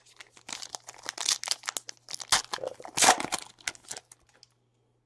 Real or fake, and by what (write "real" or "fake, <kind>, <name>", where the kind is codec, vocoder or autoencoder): real